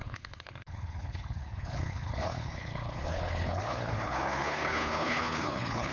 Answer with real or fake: fake